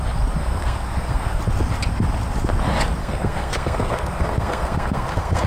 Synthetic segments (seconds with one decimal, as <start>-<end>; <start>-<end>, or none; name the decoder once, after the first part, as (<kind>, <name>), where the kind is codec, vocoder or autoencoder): 0.4-1.4 (codec, SNAC); 3.0-5.5